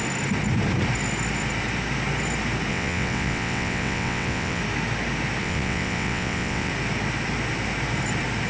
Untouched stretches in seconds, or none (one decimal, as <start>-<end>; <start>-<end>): 0.0-2.7; 4.6-5.4; 6.7-8.5